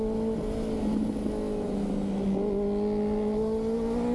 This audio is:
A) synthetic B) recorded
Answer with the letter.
B